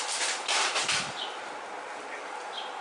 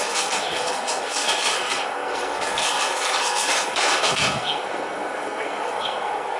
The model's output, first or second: second